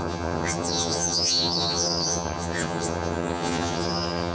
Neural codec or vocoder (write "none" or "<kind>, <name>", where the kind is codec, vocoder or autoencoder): vocoder, HiFi-GAN